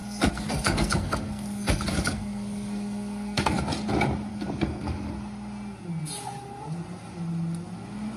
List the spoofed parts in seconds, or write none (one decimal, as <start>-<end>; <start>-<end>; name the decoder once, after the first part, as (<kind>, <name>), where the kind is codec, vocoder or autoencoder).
0.0-3.6 (codec, SNAC); 4.3-5.1